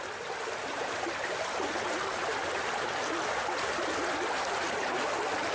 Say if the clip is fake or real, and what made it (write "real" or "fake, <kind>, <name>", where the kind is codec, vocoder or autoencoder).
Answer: real